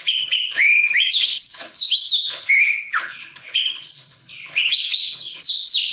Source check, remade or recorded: remade